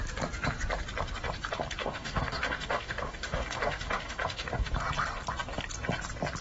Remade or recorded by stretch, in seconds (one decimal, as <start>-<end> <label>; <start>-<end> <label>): 0.0-1.8 recorded; 1.8-4.7 remade; 4.7-6.4 recorded